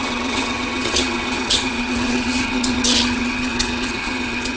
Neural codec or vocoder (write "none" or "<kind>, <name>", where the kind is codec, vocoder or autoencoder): vocoder, HiFi-GAN